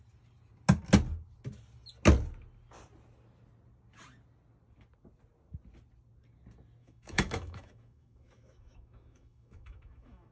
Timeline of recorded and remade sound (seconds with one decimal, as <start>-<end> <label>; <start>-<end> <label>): 0.0-6.8 recorded; 6.8-10.3 remade

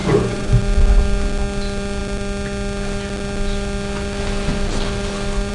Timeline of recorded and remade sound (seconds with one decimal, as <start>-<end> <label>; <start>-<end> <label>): 0.0-0.6 remade; 0.6-5.5 recorded

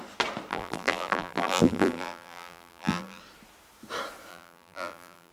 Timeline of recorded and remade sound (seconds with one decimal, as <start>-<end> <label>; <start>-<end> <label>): 0.0-0.5 recorded; 0.5-3.2 remade; 3.2-4.3 recorded; 4.3-5.3 remade